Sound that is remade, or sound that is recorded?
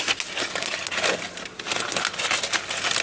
recorded